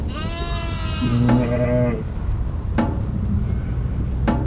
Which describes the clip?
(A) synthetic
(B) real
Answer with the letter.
B